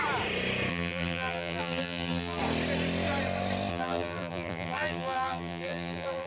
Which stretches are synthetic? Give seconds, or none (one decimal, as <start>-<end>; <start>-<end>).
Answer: 0.7-2.4; 3.7-6.3